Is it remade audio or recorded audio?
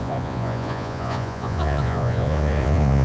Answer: remade